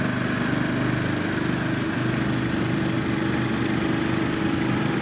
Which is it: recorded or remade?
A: recorded